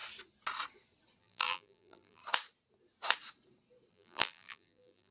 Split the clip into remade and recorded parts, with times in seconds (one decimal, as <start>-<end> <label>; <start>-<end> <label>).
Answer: 0.0-1.2 recorded; 1.2-2.2 remade; 2.2-3.9 recorded; 3.9-5.1 remade